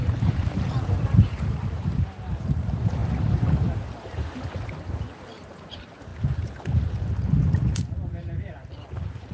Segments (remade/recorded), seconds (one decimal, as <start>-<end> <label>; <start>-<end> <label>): 0.0-6.1 remade; 6.1-8.1 recorded; 8.1-9.3 remade